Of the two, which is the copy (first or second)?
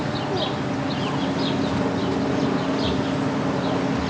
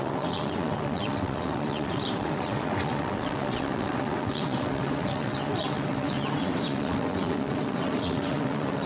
second